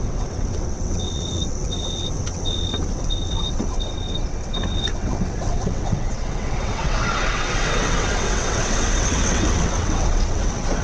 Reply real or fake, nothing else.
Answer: fake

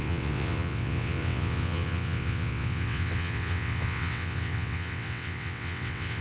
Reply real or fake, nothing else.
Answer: fake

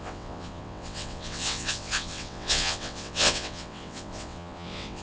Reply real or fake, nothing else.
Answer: fake